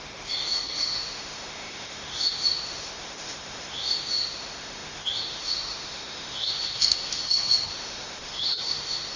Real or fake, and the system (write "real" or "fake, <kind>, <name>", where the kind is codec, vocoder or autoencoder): fake, autoencoder, DAC-VAE